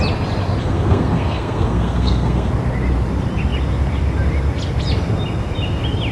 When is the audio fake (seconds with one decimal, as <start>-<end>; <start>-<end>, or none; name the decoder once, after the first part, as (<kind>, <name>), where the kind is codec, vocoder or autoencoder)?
0.6-2.5 (codec, SNAC)